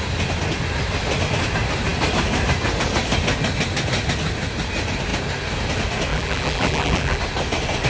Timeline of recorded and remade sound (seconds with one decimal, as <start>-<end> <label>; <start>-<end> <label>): 0.0-6.1 recorded; 6.1-7.2 remade; 7.2-7.9 recorded